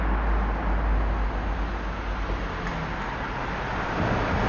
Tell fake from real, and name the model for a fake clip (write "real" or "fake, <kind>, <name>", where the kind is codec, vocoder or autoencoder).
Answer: real